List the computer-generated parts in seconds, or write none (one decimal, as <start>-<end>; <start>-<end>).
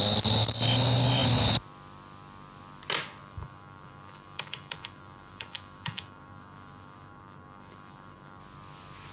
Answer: 3.2-8.4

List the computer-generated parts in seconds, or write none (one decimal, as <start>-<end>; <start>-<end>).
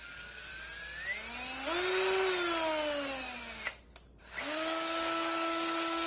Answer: 0.0-0.5; 4.2-6.1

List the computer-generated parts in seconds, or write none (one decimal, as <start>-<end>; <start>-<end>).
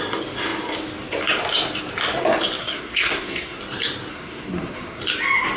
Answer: 2.6-3.6; 4.1-5.0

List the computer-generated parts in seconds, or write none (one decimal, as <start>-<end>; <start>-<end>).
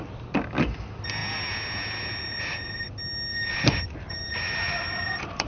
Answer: 3.3-5.5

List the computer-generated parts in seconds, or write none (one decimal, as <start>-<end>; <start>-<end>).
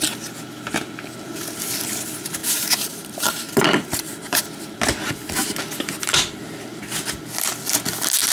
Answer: 2.4-4.4; 5.4-6.8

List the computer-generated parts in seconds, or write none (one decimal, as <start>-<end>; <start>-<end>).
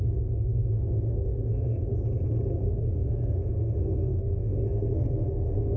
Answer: 0.0-1.9; 2.5-5.8